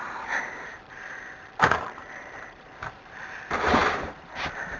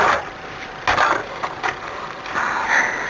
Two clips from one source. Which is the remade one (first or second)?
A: first